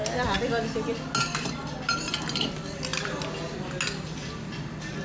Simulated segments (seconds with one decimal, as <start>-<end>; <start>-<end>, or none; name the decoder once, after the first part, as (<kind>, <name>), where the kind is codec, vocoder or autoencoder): none